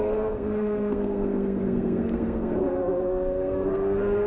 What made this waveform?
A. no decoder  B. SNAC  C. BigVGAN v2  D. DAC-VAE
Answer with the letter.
B